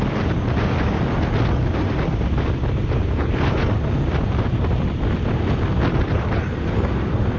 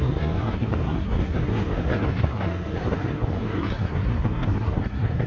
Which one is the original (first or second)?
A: first